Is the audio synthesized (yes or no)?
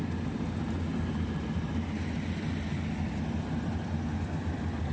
no